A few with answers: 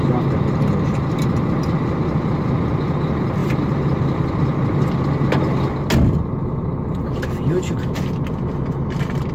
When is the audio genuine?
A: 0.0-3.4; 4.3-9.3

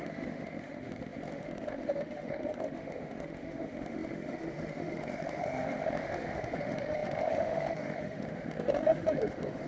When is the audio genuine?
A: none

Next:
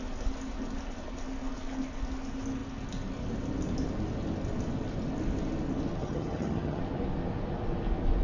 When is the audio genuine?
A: 0.0-6.0; 6.8-8.2

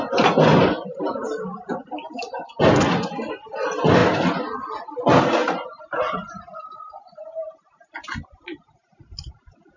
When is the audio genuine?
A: 0.0-9.8

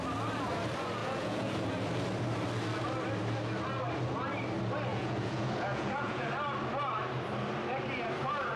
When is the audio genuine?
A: 0.0-1.0; 1.6-4.9; 6.3-8.6